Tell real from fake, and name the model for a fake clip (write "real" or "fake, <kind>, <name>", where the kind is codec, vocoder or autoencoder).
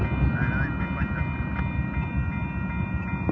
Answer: real